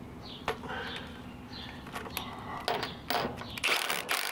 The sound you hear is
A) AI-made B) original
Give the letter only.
B